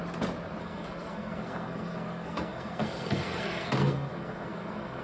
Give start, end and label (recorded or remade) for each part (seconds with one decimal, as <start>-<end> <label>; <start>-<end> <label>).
0.0-0.6 recorded; 0.6-5.0 remade